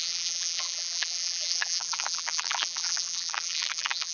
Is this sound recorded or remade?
remade